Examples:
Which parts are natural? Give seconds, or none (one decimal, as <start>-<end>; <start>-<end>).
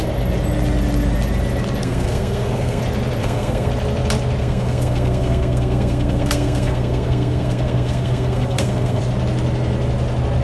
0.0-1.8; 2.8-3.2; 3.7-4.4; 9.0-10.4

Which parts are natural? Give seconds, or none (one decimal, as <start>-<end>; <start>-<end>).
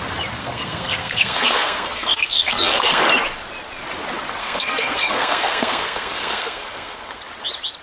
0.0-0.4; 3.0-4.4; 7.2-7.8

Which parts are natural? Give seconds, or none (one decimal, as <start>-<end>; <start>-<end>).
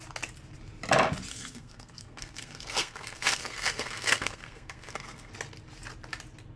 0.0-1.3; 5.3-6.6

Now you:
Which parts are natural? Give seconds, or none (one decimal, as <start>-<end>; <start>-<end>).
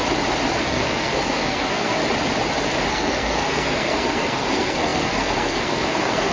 0.0-0.6; 2.0-2.9